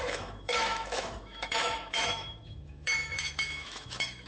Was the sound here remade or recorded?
remade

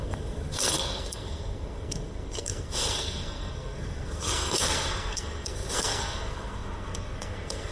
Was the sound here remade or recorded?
remade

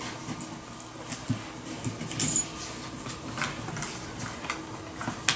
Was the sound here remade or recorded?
recorded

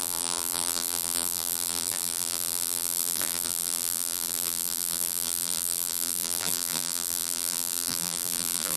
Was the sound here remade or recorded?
remade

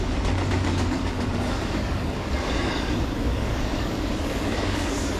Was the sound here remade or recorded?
remade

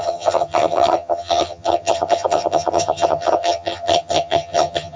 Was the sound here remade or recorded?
remade